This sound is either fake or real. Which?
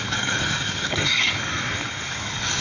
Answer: fake